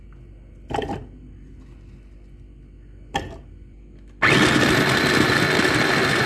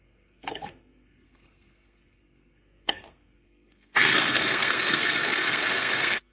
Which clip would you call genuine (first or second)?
first